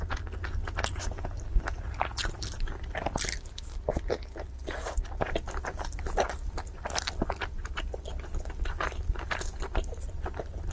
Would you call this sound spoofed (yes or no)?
no